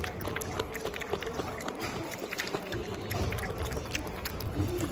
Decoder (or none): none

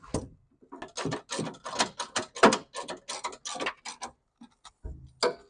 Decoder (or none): none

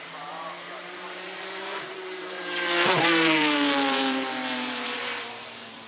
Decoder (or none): vocoder, BigVGAN v2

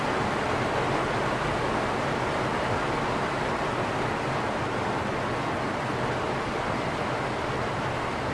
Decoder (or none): none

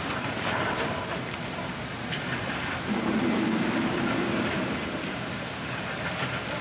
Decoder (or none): vocoder, BigVGAN v2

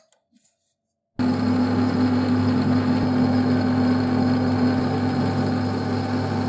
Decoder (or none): none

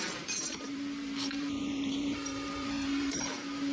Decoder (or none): vocoder, BigVGAN v2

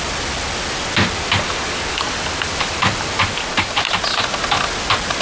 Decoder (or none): none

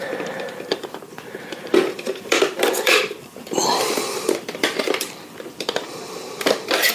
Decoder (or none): vocoder, BigVGAN v2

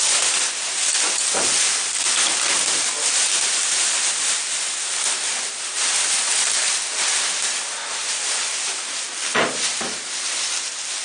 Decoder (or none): none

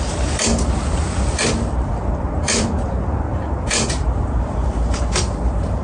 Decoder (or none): vocoder, BigVGAN v2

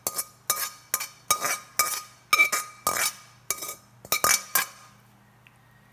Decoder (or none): none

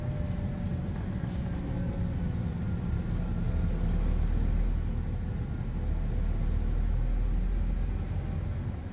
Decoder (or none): none